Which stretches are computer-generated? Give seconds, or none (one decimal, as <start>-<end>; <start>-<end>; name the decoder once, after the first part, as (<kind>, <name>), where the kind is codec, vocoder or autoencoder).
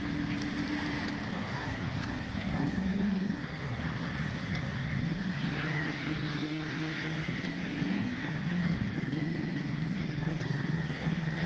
1.3-11.5 (codec, SNAC)